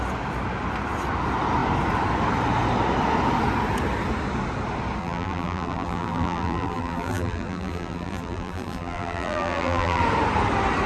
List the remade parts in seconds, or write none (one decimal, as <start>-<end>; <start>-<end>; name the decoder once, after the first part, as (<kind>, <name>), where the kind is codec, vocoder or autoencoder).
5.0-10.0 (vocoder, BigVGAN v2)